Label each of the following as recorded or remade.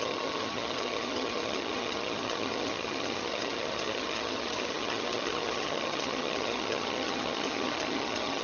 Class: remade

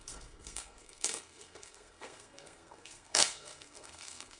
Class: remade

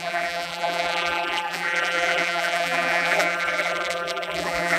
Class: remade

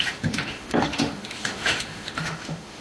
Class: remade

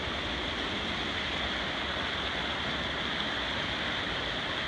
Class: recorded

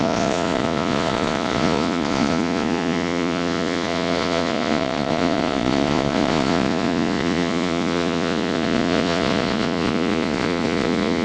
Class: remade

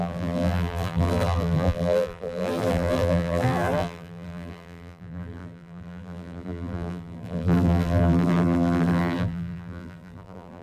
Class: remade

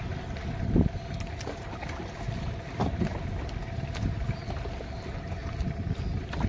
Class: recorded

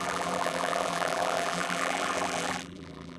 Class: remade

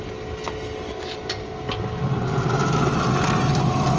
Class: recorded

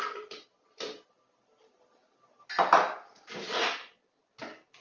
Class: recorded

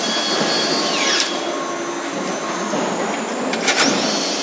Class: recorded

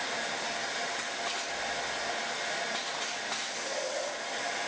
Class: recorded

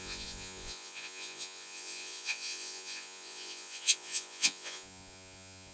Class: remade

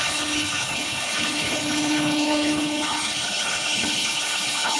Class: remade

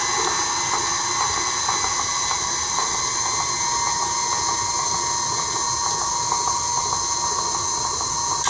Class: recorded